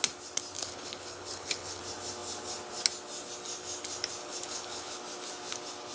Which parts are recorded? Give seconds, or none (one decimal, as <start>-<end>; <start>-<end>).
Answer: 0.0-0.6; 1.8-4.2; 5.0-5.9

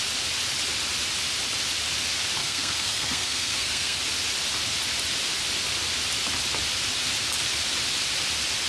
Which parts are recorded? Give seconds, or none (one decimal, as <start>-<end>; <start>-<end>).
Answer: 0.0-2.4; 4.0-8.7

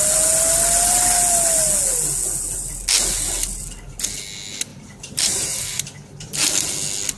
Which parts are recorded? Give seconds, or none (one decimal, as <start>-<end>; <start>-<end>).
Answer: 0.0-4.7; 5.9-7.2